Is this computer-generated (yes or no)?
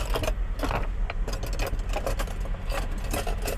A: no